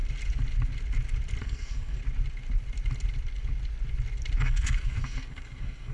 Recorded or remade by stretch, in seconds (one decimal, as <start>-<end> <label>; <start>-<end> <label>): 0.0-1.4 recorded; 1.4-2.0 remade; 2.0-4.4 recorded; 4.4-5.9 remade